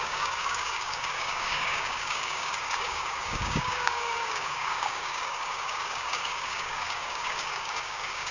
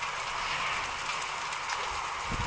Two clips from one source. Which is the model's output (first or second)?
first